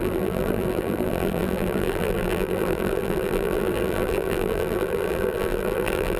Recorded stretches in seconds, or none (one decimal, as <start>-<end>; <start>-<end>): none